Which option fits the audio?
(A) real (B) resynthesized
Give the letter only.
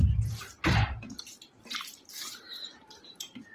B